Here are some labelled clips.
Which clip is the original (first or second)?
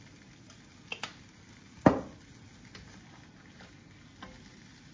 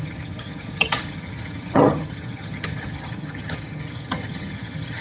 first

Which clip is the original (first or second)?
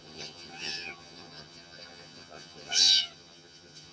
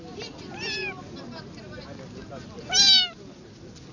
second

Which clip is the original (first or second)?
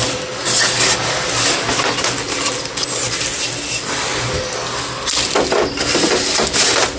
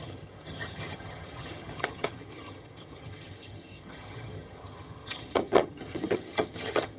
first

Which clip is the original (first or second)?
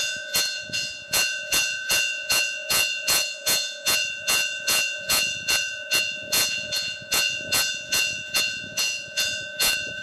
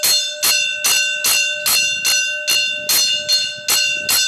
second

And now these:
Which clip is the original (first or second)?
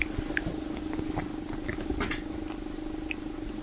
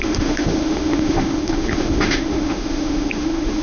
first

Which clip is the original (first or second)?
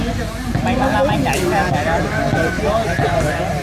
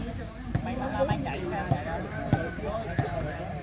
first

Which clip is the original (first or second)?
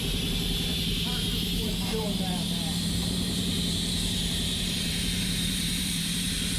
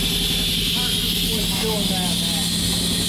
second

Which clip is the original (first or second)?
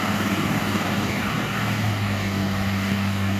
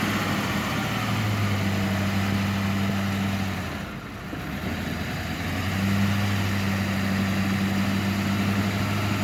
second